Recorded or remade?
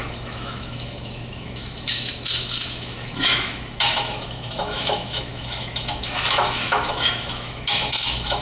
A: remade